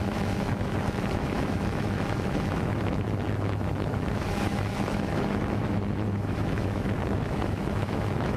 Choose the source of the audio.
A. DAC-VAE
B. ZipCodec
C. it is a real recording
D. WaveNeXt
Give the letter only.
A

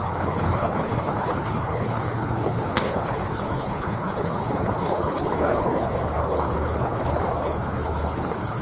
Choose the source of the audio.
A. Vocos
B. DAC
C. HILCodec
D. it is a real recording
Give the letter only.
C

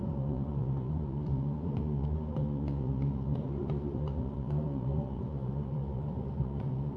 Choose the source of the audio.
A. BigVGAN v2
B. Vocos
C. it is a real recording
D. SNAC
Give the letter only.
B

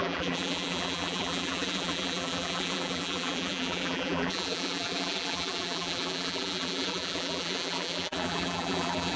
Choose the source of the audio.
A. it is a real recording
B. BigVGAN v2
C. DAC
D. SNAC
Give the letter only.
B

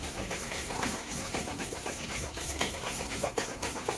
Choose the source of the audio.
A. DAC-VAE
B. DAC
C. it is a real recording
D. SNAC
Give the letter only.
D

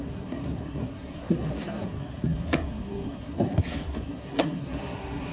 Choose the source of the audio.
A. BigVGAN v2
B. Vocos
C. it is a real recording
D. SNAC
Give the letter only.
D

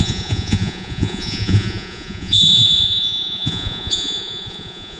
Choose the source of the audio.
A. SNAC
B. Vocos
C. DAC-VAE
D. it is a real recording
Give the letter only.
B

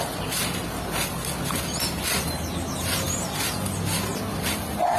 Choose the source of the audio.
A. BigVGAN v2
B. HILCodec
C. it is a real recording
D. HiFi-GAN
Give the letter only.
C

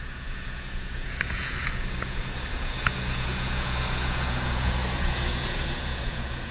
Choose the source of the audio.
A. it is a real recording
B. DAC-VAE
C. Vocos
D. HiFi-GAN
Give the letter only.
C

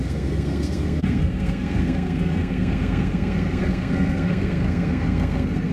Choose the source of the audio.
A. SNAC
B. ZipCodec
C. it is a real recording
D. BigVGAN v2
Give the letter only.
A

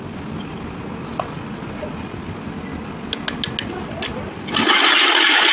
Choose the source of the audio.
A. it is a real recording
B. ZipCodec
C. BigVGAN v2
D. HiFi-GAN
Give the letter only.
A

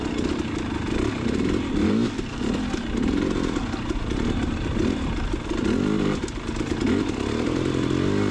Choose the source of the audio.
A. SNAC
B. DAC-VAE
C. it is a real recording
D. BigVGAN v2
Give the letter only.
C